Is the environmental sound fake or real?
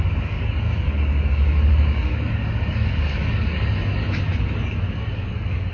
fake